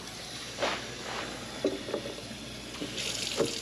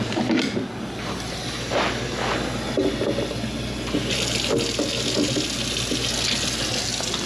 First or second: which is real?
second